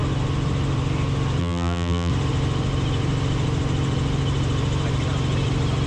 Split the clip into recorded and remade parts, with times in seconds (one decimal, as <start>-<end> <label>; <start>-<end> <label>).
0.0-1.4 recorded; 1.4-2.1 remade; 2.1-5.9 recorded